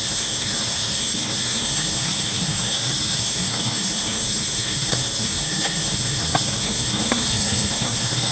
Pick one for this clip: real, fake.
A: fake